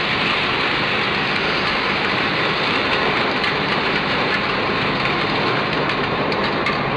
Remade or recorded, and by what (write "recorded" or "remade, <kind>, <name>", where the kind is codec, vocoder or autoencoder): remade, vocoder, BigVGAN v2